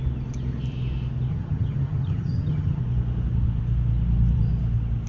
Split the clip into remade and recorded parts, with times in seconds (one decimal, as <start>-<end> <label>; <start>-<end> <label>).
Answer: 0.0-1.3 recorded; 1.3-2.8 remade; 2.8-5.1 recorded